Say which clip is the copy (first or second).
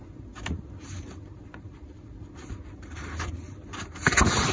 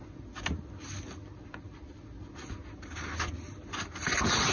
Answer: first